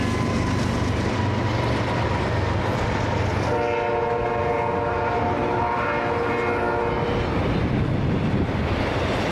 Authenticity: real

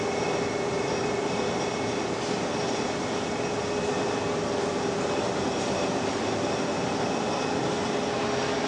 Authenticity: real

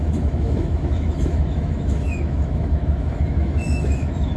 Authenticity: fake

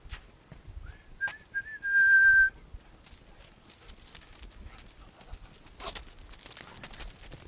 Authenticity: real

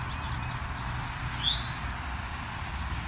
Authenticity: real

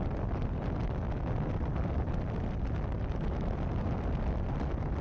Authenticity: real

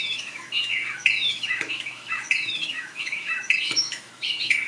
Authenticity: fake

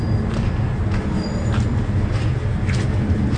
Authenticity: real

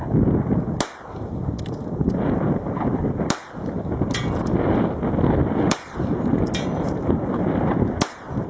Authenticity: real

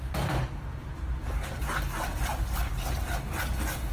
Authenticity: real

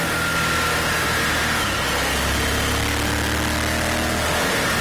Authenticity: real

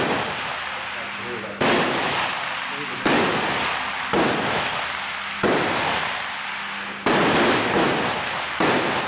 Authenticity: real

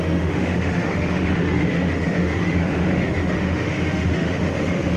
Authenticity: fake